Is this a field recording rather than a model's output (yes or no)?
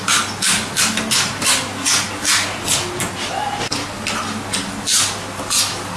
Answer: yes